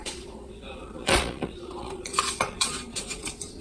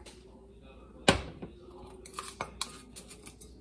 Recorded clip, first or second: second